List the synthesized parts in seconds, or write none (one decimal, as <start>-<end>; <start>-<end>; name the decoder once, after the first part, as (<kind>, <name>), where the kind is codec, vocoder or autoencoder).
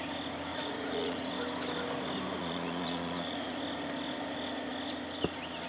0.5-1.3 (vocoder, Vocos); 2.4-3.6